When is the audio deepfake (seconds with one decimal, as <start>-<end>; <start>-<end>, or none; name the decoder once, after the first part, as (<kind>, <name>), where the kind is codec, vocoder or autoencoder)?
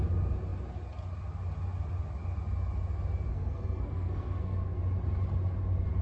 3.3-4.8 (codec, SNAC)